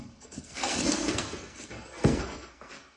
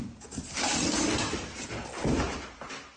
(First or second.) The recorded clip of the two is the second